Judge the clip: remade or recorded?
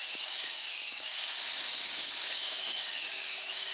remade